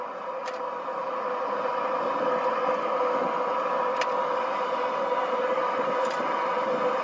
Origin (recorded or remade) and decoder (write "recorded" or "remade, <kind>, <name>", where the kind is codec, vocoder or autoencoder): recorded